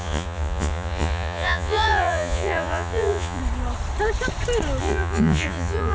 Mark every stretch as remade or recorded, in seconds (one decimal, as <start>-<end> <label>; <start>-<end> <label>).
0.0-3.4 remade; 3.4-4.8 recorded; 4.8-5.9 remade